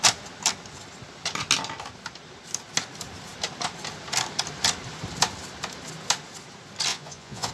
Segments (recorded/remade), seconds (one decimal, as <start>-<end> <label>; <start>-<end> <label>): 0.0-6.9 recorded; 6.9-7.5 remade